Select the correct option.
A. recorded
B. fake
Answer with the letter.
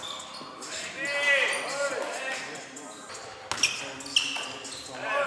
A